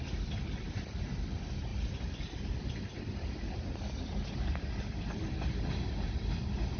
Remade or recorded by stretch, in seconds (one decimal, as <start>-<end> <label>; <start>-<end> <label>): 0.0-6.8 recorded